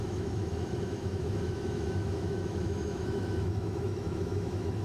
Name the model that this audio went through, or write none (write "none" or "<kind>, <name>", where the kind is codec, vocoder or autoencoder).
autoencoder, DAC-VAE